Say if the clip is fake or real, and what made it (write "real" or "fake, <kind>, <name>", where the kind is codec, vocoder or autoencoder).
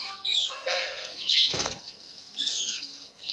fake, codec, SNAC